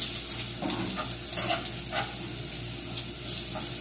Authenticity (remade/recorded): recorded